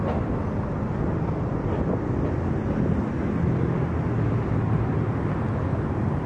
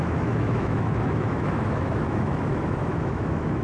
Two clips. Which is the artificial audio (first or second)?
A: second